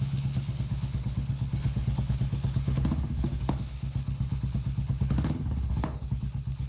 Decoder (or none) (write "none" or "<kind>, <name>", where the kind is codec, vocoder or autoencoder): codec, HILCodec